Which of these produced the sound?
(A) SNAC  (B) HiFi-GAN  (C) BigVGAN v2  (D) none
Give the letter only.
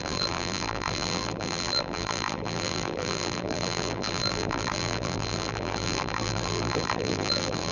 C